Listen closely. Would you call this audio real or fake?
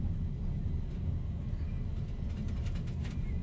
real